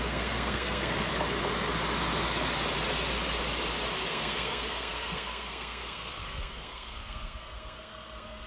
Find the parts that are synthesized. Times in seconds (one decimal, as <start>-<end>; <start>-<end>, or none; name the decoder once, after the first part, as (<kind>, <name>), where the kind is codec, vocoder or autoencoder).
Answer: 0.0-1.1 (codec, SNAC); 4.1-8.5